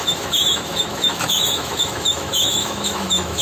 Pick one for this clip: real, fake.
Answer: fake